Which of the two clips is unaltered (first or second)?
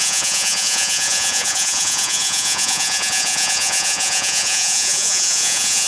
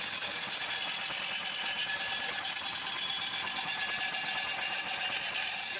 second